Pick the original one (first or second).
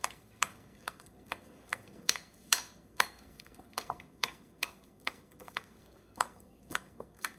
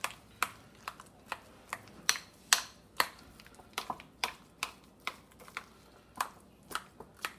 second